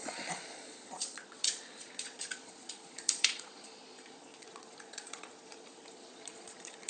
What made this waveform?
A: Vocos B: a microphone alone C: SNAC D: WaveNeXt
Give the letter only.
A